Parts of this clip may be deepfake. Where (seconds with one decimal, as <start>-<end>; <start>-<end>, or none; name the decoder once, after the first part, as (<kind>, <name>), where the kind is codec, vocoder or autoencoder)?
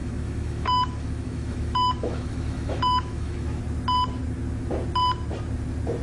0.0-3.6 (autoencoder, DAC-VAE)